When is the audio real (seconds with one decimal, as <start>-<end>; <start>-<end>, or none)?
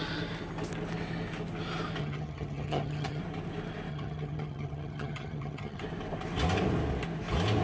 0.0-2.0; 3.2-3.9; 5.8-7.6